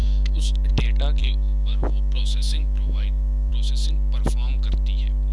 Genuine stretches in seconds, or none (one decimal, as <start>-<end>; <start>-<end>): 0.7-1.2; 3.5-5.3